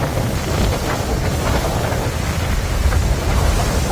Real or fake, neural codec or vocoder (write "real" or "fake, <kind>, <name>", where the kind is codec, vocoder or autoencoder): real